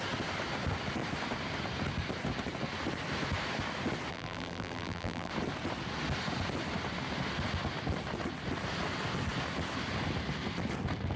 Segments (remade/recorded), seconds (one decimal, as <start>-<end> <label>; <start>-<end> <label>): 0.0-4.1 recorded; 4.1-5.3 remade; 5.3-11.2 recorded

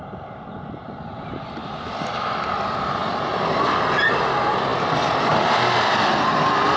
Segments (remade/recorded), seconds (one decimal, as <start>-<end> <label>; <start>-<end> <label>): 0.0-6.8 recorded

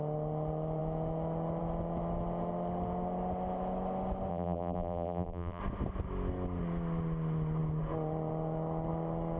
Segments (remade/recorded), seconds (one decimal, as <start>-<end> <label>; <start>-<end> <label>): 0.0-4.3 recorded; 4.3-5.6 remade; 5.6-9.4 recorded

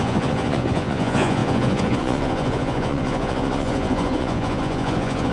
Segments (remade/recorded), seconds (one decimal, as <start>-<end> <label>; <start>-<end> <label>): 0.0-5.3 remade